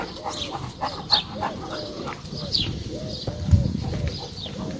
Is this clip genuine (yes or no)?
no